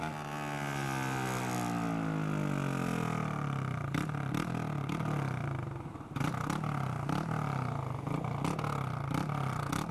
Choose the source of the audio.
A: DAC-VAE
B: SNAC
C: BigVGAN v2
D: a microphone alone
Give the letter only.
D